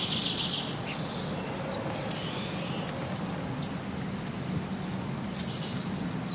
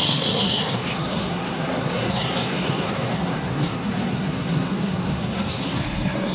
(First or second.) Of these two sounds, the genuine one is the first